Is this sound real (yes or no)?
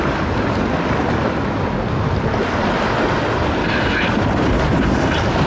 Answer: yes